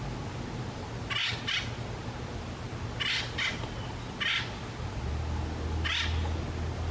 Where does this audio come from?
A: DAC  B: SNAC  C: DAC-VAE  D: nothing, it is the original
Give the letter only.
D